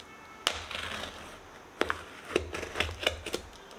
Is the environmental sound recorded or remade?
recorded